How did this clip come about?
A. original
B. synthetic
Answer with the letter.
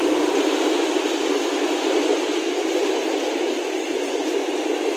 A